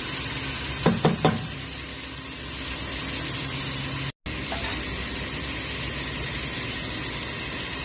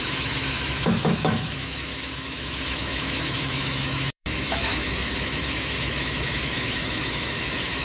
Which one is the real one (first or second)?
first